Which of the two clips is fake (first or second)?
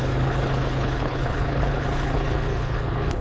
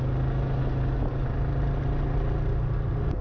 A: first